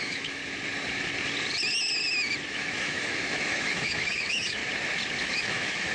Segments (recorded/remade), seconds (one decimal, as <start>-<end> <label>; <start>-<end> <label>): 0.0-0.4 remade; 0.4-2.5 recorded; 2.5-4.6 remade; 4.6-5.2 recorded; 5.2-5.9 remade